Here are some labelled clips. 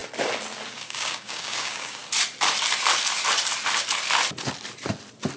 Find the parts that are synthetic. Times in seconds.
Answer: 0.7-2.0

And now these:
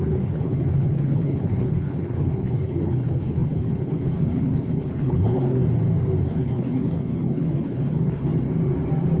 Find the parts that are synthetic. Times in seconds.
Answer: 0.0-5.6; 6.2-8.3

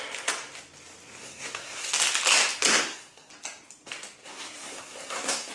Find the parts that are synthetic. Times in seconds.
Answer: 1.2-1.9; 2.7-3.3; 4.2-5.5

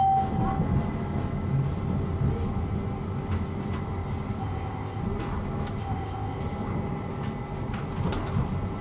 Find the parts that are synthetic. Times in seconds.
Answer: 4.4-5.0; 5.8-6.4

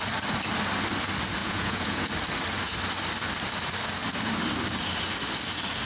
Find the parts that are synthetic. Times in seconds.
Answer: 1.4-2.1

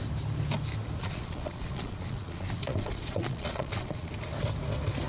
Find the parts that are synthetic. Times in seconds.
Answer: 1.0-4.1

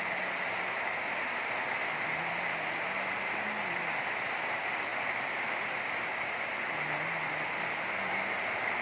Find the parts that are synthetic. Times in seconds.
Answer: none

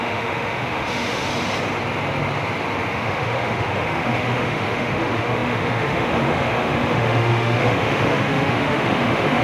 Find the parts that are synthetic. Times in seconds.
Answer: 0.0-1.3; 2.9-9.4